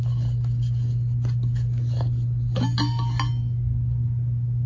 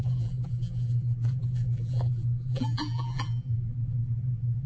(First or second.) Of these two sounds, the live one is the first